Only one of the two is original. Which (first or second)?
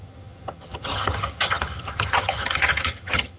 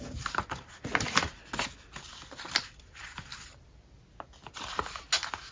second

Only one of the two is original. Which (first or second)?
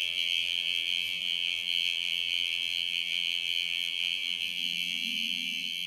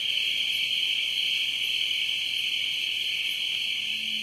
second